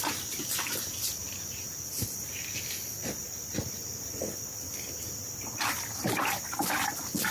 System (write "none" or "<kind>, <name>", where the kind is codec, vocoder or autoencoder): none